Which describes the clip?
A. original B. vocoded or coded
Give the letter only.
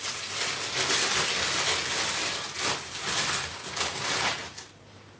A